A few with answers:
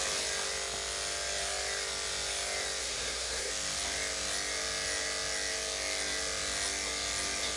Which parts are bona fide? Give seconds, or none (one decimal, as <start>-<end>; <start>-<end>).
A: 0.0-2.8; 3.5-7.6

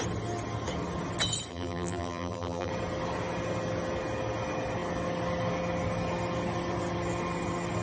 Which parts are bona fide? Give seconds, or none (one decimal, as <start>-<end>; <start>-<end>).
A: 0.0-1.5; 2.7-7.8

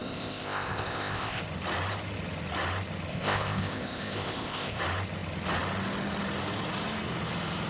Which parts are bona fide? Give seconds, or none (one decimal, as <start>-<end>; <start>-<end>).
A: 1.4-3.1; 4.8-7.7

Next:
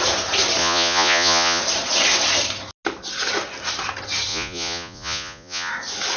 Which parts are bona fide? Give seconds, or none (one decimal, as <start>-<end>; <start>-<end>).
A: 0.0-0.6; 1.6-4.3; 5.7-6.2